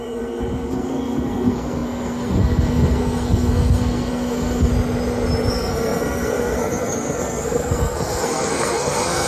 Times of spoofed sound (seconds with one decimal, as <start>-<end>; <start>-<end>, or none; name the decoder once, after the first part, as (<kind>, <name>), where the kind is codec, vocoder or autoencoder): 0.0-4.7 (codec, SNAC); 5.5-9.3